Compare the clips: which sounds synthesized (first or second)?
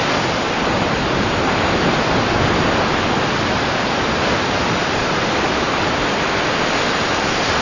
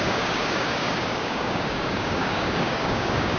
second